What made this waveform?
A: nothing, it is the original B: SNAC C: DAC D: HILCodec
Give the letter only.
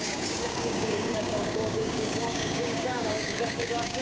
C